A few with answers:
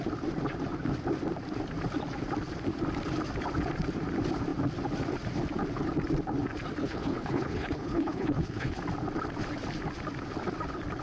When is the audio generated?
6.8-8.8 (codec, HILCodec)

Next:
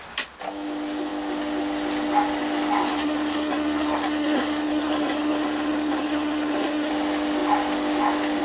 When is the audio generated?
2.9-6.9 (codec, SNAC)

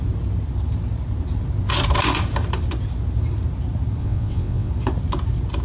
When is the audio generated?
4.0-4.7 (vocoder, WaveNeXt)

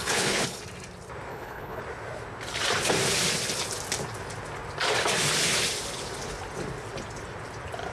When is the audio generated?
0.0-0.6 (codec, HILCodec); 1.3-1.8

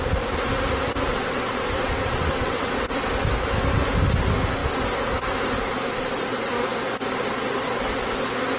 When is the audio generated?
1.1-2.7 (vocoder, WaveNeXt)

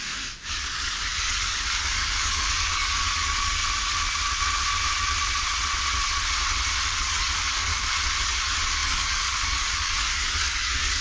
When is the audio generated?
0.0-3.6 (codec, DAC); 7.0-7.7; 8.2-11.0

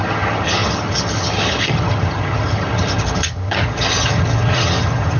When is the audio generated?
0.0-5.2 (vocoder, HiFi-GAN)